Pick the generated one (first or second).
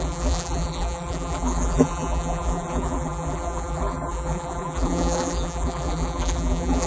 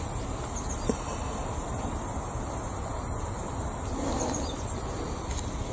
first